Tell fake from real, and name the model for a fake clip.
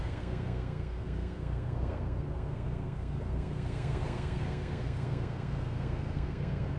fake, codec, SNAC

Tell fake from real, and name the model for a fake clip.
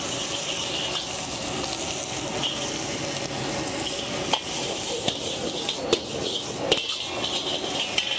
real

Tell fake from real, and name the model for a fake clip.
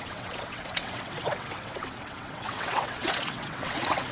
fake, vocoder, WaveNeXt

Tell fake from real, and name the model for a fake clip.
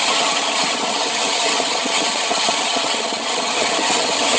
fake, vocoder, HiFi-GAN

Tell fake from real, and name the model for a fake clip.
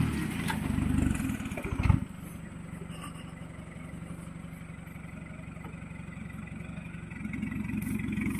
real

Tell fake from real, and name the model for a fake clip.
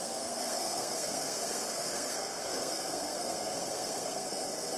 fake, codec, SNAC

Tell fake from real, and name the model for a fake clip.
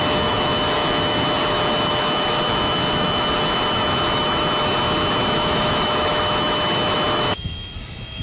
fake, autoencoder, DAC-VAE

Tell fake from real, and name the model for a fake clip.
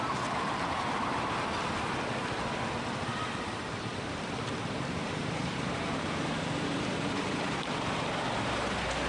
real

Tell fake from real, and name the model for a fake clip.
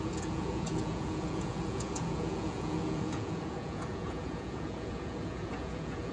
fake, vocoder, Vocos